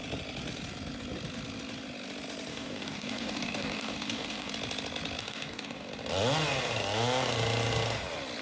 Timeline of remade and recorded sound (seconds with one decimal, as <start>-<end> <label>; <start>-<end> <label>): 0.0-2.5 recorded; 2.5-4.5 remade; 4.5-5.2 recorded; 5.2-5.9 remade; 5.9-8.4 recorded